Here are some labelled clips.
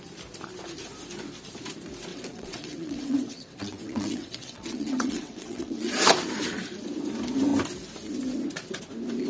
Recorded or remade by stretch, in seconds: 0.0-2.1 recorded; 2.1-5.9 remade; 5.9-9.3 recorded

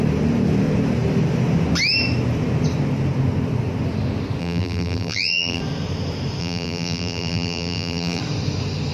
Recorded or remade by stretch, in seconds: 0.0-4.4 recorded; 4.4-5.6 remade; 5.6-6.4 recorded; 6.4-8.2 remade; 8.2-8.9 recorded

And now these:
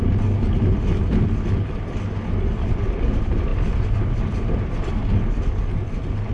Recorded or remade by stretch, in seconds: 0.0-6.3 recorded

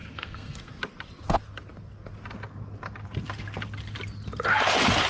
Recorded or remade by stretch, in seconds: 0.0-0.8 remade; 0.8-5.1 recorded

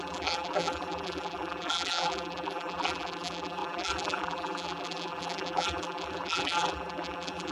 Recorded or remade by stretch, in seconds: 0.0-7.5 remade

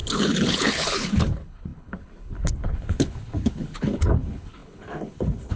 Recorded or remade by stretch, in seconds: 0.0-5.6 remade

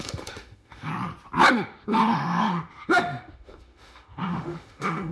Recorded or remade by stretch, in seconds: 0.0-0.9 remade; 0.9-1.5 recorded; 1.5-5.1 remade